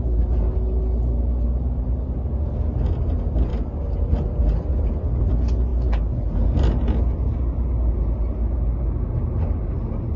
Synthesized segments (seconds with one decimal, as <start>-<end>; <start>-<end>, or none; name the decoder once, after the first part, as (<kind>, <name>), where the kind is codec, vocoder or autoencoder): none